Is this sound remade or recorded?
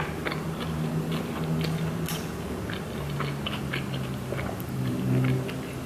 recorded